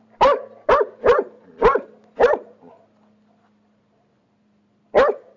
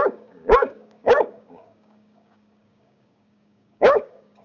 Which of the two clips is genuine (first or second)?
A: first